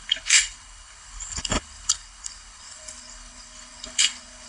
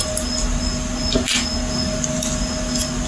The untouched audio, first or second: second